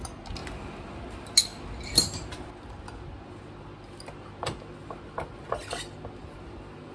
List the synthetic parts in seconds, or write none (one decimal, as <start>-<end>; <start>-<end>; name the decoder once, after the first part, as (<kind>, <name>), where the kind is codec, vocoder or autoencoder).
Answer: none